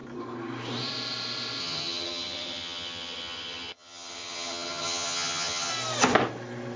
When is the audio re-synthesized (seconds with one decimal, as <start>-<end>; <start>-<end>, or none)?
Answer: 1.6-5.7